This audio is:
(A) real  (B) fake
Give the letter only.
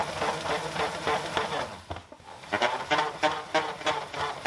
A